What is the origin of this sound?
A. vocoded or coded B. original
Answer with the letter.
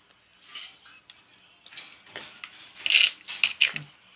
B